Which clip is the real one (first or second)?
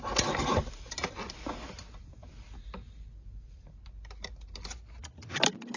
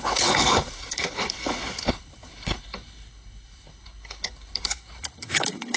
first